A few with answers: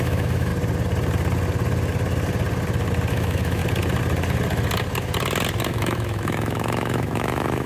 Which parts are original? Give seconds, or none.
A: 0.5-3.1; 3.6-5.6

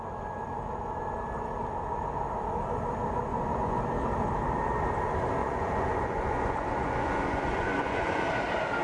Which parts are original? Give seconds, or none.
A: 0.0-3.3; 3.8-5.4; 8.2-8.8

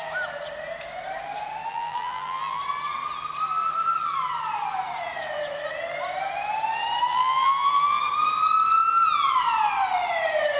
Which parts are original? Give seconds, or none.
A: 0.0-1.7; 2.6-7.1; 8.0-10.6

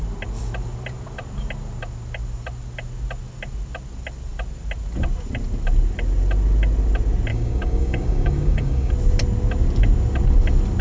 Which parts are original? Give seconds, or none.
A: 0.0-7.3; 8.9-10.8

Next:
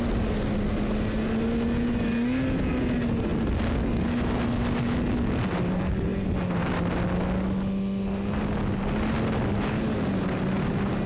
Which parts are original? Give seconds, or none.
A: 0.0-11.1

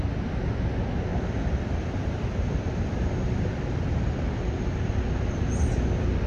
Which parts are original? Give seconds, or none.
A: 0.0-1.1; 4.9-6.3